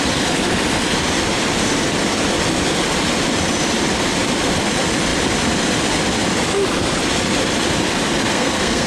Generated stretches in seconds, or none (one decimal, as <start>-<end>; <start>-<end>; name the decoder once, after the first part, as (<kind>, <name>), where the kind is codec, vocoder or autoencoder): 8.3-8.9 (codec, SNAC)